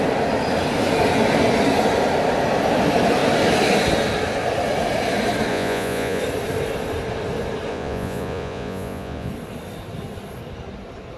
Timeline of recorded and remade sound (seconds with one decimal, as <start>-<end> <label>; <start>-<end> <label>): 0.0-5.5 recorded; 5.5-6.2 remade; 6.2-7.7 recorded; 7.7-9.3 remade; 9.3-11.2 recorded